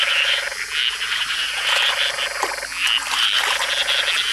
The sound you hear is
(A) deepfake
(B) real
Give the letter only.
B